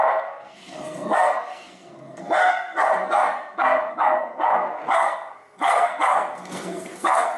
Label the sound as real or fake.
fake